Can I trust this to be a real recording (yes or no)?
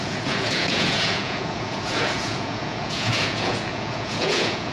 no